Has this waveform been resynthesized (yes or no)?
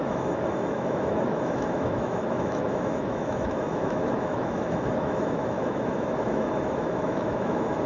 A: yes